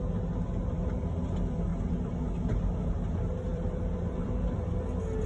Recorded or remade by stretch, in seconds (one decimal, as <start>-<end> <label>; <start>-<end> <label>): 0.0-3.5 recorded; 3.5-4.8 remade; 4.8-5.3 recorded